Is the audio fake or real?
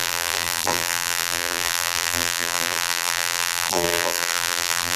fake